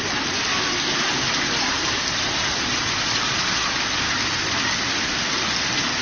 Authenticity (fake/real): real